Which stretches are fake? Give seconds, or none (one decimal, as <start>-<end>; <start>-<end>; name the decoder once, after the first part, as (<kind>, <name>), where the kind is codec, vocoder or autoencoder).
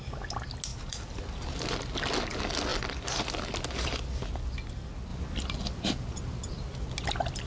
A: 0.7-1.2 (vocoder, BigVGAN v2)